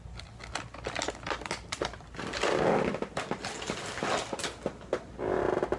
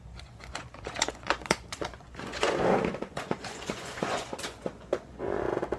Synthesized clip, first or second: second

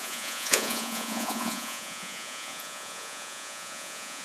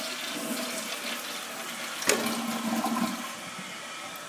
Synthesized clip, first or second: first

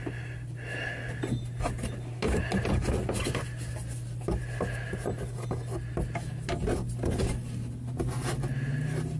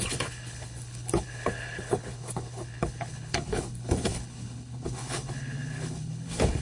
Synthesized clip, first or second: second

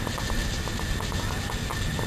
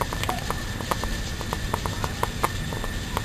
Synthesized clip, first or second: second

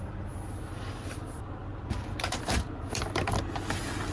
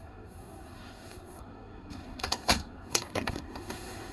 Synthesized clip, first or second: second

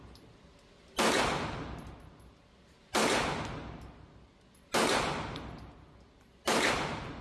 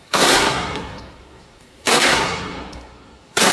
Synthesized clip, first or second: second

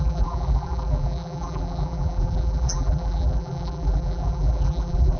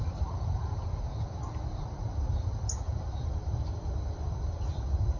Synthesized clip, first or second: first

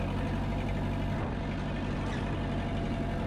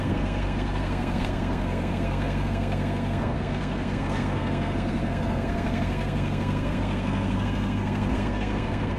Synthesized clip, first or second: second